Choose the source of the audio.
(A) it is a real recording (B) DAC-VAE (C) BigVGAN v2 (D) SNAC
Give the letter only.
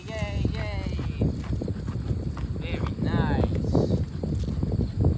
A